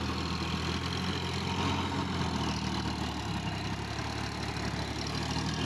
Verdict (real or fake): real